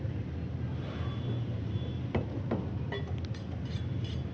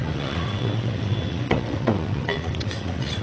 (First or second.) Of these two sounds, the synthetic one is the second